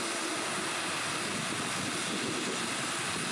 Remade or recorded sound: recorded